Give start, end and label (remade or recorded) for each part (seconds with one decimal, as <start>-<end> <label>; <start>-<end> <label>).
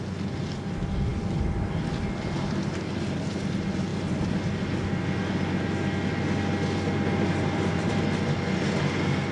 0.0-9.3 recorded